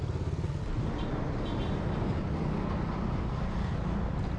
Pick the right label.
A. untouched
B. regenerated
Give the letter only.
A